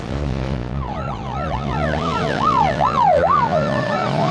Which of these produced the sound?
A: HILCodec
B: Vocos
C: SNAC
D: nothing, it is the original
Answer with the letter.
B